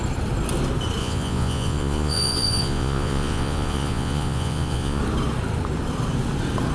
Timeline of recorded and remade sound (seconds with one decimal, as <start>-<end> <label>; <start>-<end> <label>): 0.0-1.0 recorded; 1.0-5.0 remade; 5.0-6.7 recorded